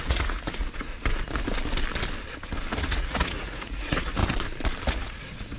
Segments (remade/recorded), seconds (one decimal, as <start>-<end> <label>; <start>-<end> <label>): 0.0-0.9 remade; 0.9-2.8 recorded; 2.8-4.2 remade; 4.2-4.9 recorded; 4.9-5.6 remade

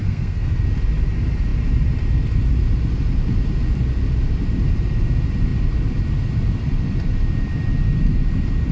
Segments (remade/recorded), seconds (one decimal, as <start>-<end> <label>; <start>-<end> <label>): 0.0-0.6 remade; 0.6-8.7 recorded

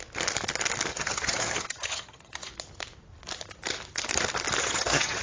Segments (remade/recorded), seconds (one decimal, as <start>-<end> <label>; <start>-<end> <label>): 0.0-0.9 recorded; 0.9-2.5 remade; 2.5-4.6 recorded; 4.6-5.2 remade